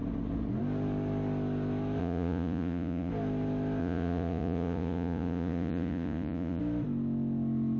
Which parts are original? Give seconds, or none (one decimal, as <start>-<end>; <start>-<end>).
0.0-2.0; 3.1-3.8; 6.6-7.8